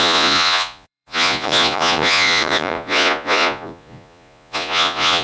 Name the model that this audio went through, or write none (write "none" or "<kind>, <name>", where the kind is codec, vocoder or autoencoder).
vocoder, Vocos